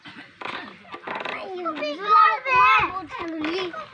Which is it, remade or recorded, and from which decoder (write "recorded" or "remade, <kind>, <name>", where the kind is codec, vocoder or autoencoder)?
remade, vocoder, BigVGAN v2